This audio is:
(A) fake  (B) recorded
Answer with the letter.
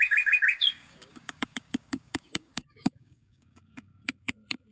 A